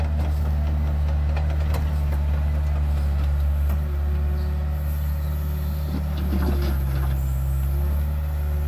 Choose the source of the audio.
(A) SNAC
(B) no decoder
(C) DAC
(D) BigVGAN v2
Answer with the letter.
B